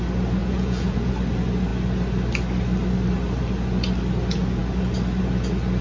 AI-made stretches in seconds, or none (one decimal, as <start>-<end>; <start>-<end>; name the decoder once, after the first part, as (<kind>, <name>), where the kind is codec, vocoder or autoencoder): 0.4-1.1 (vocoder, Vocos)